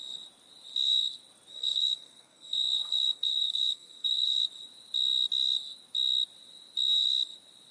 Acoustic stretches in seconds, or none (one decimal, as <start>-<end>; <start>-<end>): 0.0-1.5; 4.4-7.7